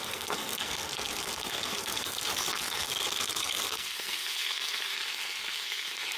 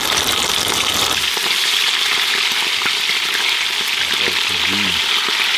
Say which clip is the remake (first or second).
first